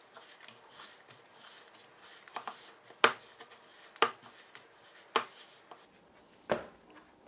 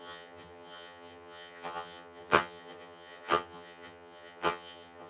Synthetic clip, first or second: second